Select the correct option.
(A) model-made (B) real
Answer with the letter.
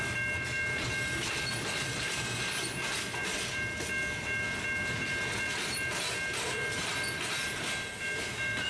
B